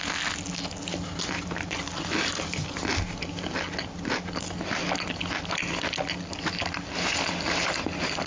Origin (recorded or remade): recorded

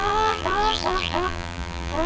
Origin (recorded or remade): remade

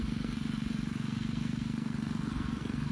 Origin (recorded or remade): remade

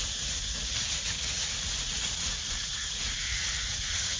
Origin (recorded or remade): remade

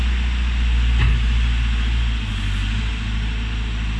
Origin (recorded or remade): recorded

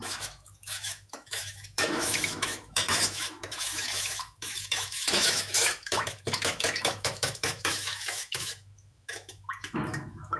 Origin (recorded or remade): remade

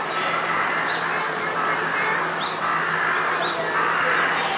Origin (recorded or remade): recorded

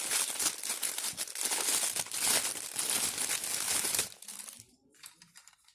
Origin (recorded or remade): recorded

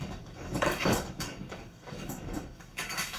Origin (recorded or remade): remade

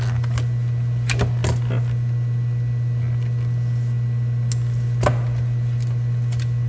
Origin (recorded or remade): recorded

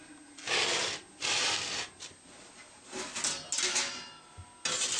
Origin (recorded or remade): recorded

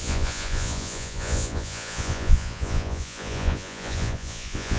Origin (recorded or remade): remade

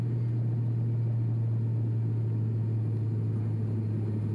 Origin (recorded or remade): recorded